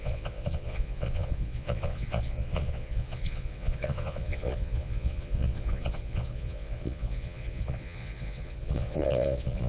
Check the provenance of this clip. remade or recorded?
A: remade